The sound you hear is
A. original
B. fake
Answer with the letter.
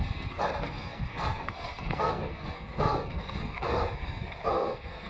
B